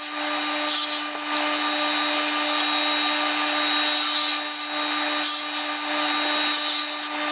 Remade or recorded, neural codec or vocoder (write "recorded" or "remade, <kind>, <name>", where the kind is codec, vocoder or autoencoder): recorded